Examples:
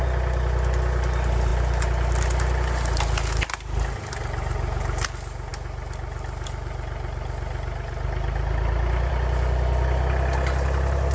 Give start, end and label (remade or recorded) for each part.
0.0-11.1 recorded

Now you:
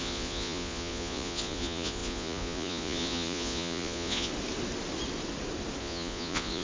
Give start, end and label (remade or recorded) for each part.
0.0-4.3 remade; 4.3-5.8 recorded; 5.8-6.6 remade